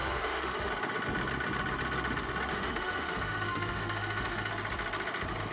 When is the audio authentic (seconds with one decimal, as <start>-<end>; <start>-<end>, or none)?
0.7-2.5; 4.5-5.5